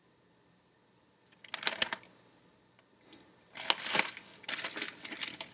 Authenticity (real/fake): real